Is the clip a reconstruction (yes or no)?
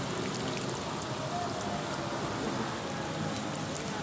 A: no